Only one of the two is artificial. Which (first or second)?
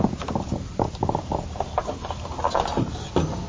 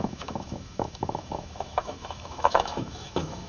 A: second